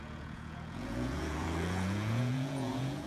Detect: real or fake fake